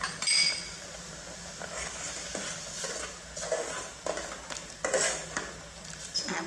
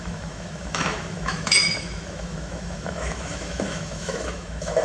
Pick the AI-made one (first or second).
second